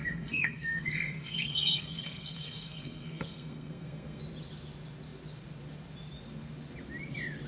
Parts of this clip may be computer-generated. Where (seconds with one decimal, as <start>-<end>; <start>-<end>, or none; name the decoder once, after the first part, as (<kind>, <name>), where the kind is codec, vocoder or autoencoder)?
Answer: 0.0-4.2 (codec, SNAC)

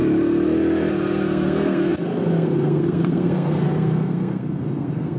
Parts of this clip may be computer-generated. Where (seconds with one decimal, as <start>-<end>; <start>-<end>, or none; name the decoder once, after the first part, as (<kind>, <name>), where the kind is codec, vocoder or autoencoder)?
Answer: 0.9-5.2 (codec, SNAC)